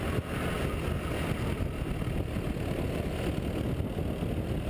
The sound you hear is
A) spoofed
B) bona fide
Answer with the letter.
B